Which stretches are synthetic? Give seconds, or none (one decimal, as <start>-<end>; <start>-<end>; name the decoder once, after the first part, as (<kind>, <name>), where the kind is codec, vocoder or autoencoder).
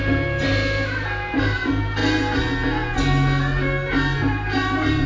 none